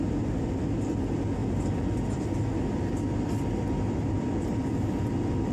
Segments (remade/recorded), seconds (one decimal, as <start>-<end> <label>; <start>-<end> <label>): 0.0-5.5 recorded